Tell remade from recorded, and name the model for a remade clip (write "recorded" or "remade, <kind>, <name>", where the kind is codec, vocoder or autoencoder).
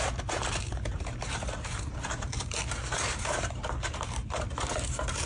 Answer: remade, vocoder, BigVGAN v2